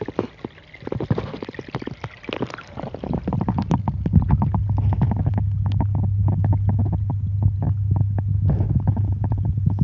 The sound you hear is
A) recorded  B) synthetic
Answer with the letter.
A